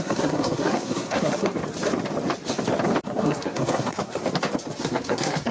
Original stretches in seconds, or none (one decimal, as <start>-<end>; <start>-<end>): 1.6-3.0; 4.2-4.8